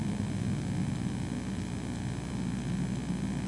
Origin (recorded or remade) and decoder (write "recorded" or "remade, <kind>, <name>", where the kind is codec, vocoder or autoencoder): recorded